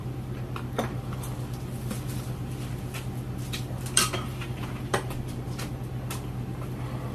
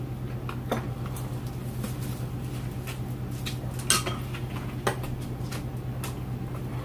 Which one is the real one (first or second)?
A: second